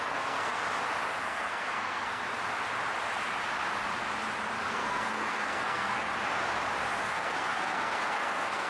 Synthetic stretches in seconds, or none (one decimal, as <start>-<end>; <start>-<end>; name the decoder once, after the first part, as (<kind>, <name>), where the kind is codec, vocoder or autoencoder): 0.0-0.6 (codec, SNAC); 1.2-2.2; 4.7-6.1; 7.0-8.7